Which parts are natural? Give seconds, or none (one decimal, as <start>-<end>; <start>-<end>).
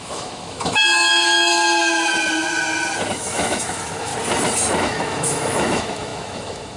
1.5-3.1; 4.1-4.8